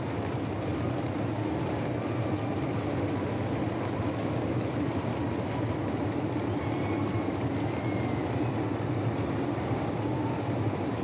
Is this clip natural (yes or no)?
yes